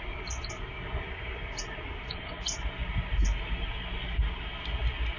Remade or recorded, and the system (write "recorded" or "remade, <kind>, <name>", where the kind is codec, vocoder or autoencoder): recorded